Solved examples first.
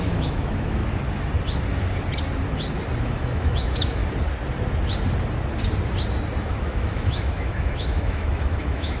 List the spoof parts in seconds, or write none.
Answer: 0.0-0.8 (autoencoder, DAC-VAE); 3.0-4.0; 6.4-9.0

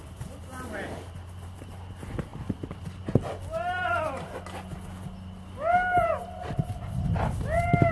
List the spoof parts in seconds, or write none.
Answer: none